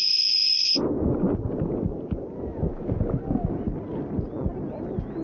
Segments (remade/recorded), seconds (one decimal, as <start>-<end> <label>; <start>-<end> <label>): 0.0-5.2 recorded